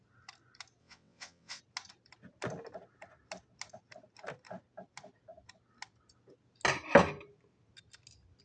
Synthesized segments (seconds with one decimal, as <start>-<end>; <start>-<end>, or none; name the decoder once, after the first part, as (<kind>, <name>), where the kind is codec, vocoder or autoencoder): 0.8-1.6 (vocoder, WaveNeXt)